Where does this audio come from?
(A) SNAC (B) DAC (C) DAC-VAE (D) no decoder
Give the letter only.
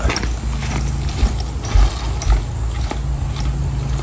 D